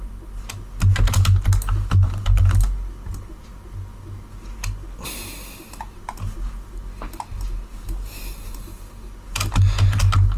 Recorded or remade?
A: recorded